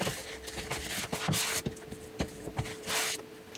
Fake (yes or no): no